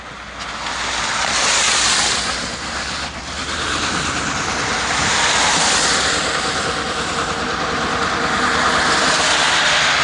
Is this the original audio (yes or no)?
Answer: yes